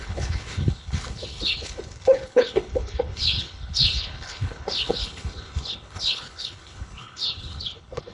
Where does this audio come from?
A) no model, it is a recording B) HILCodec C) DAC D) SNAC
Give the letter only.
B